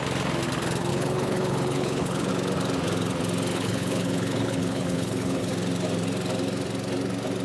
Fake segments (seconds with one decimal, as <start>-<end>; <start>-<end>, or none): 0.9-2.3; 3.5-5.5